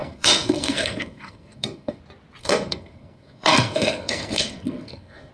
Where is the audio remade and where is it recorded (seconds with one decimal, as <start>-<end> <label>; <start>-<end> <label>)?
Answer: 0.0-2.0 remade; 2.0-2.4 recorded; 2.4-5.3 remade